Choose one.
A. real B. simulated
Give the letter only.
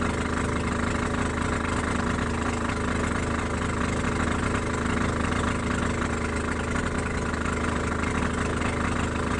A